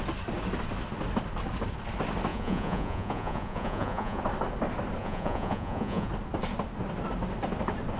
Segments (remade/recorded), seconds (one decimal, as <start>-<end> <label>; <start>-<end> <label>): 0.0-2.3 recorded; 2.3-4.2 remade; 4.2-5.0 recorded; 5.0-6.1 remade; 6.1-8.0 recorded